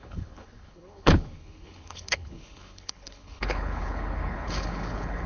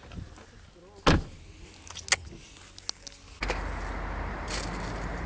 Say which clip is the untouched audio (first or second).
second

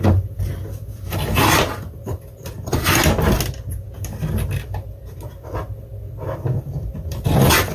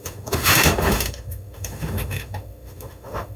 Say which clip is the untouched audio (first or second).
first